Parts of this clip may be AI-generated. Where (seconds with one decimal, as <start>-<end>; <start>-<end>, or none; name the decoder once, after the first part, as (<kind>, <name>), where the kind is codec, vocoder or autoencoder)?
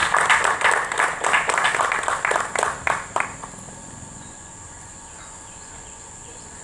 3.8-6.6 (vocoder, Vocos)